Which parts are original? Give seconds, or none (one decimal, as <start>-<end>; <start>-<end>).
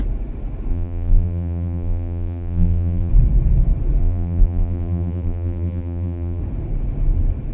0.0-0.7; 3.1-4.0; 6.4-7.5